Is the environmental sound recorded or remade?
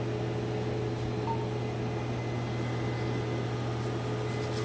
recorded